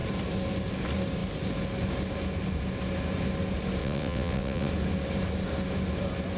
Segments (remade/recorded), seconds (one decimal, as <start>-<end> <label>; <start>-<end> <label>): 0.0-3.8 recorded; 3.8-4.7 remade; 4.7-6.4 recorded